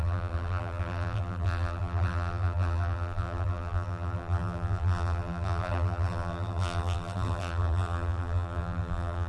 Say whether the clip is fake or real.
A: fake